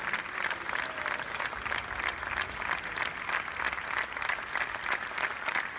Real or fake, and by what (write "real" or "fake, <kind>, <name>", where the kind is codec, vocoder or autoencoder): real